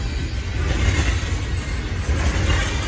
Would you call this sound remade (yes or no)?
no